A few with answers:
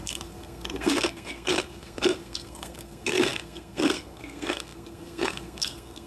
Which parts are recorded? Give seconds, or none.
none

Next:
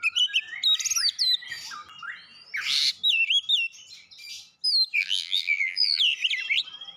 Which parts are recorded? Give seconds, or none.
0.0-5.0; 6.0-7.0

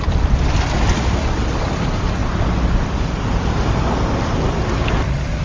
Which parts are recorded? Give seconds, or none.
0.0-2.2; 3.5-5.4

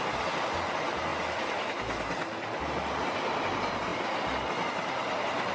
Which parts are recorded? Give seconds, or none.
0.0-5.5

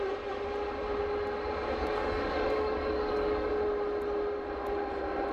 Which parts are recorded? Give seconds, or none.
0.0-1.8; 3.5-5.3

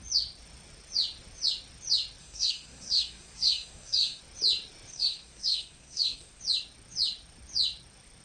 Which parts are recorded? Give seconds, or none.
0.0-2.2; 4.2-4.9; 6.4-8.2